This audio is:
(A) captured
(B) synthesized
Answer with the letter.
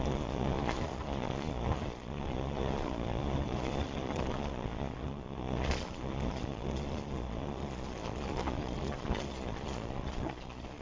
B